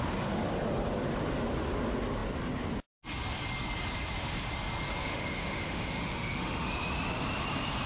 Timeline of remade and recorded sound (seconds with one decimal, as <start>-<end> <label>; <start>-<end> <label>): 0.0-5.0 recorded; 5.0-6.7 remade; 6.7-7.9 recorded